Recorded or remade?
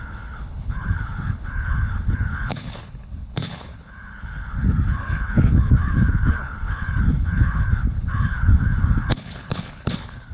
remade